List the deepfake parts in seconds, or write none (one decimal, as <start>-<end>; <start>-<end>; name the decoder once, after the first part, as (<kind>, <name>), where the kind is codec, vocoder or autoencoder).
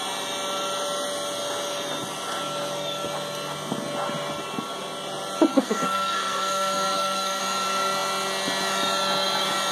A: 5.5-7.4 (codec, SNAC)